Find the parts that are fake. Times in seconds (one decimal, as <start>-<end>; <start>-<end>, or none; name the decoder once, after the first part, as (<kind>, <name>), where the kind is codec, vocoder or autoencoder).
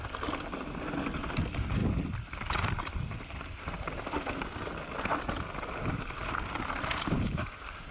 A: none